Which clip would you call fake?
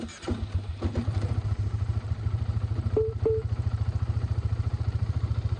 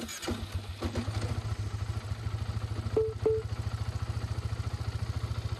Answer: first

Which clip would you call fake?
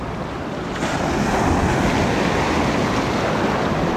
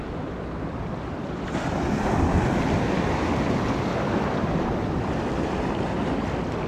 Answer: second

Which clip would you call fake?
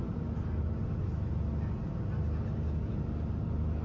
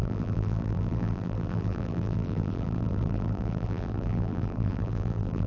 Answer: second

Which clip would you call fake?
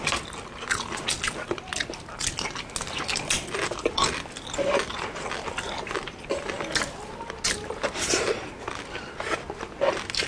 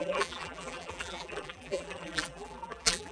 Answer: second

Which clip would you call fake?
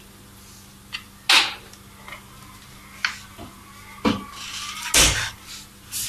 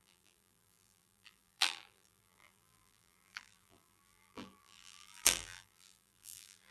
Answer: second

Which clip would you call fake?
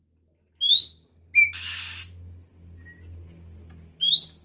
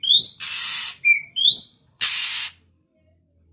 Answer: second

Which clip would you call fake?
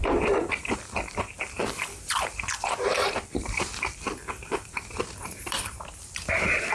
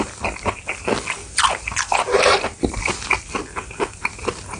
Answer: first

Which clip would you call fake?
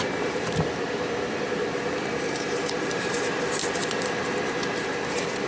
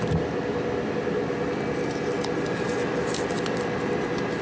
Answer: first